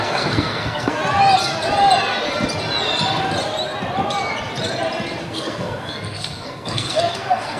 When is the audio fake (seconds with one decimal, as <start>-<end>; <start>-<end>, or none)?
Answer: 0.0-1.0; 5.2-7.6